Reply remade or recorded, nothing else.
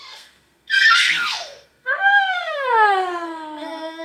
remade